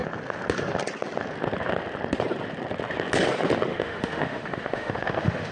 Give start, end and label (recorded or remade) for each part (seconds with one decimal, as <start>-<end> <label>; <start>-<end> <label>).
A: 0.0-3.7 recorded; 3.7-5.5 remade